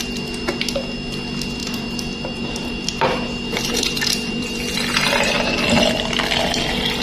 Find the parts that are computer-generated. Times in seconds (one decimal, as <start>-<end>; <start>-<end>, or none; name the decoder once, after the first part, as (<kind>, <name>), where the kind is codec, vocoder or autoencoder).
1.6-5.8 (vocoder, BigVGAN v2)